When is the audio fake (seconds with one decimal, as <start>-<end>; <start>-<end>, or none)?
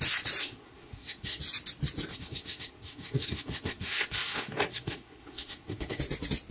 0.4-1.4; 2.1-6.0